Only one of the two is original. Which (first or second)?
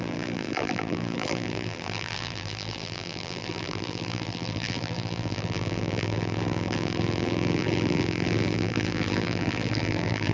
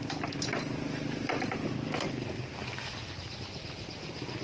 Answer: second